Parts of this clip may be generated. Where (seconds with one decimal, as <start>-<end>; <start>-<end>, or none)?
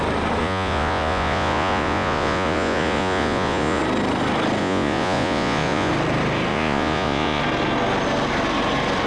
0.4-3.8; 4.6-5.9; 6.5-7.4